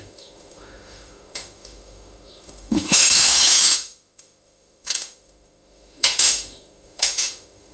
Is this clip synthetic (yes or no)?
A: yes